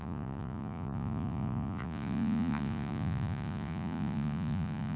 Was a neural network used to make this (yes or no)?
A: yes